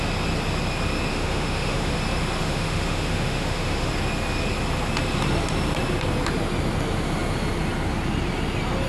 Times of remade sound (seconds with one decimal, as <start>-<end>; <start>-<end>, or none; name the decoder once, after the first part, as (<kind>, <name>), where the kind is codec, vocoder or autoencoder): 1.1-1.9 (autoencoder, DAC-VAE); 2.4-3.9